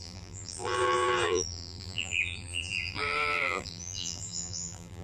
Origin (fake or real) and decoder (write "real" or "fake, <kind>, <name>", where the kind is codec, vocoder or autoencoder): fake, vocoder, BigVGAN v2